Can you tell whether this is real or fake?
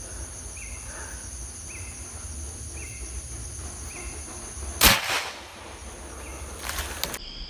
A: real